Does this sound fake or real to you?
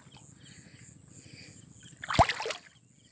real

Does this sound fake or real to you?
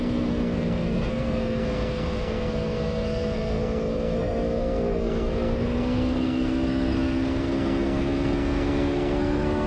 fake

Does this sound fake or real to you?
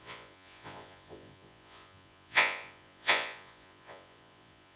fake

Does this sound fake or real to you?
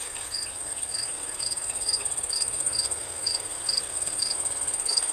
fake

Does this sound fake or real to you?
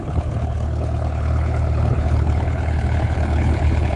fake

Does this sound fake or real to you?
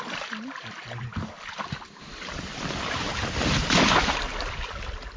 real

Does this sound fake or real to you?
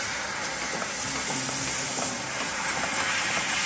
real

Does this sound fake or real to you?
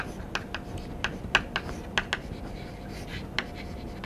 real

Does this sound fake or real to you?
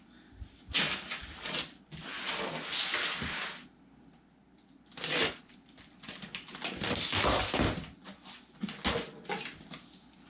real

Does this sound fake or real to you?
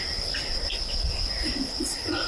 fake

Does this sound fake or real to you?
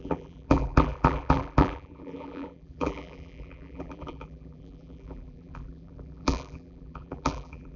fake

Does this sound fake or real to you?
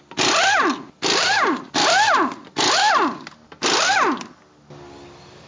real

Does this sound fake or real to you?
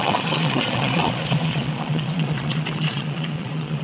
fake